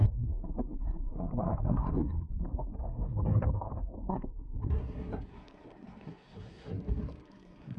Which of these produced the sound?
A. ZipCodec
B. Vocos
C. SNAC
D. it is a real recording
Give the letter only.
C